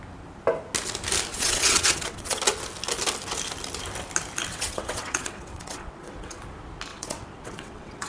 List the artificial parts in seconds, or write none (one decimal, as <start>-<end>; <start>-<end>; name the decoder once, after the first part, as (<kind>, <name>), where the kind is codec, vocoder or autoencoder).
1.3-2.4 (vocoder, WaveNeXt); 4.5-6.4; 6.9-8.1